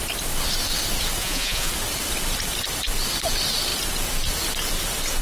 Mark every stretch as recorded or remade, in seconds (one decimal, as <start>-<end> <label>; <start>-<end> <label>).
0.0-1.2 recorded; 1.2-1.7 remade; 1.7-5.2 recorded